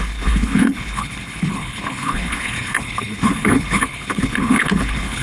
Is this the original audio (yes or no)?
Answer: no